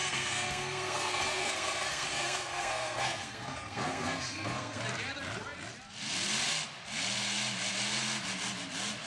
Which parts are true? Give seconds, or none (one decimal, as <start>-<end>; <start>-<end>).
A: 4.8-9.1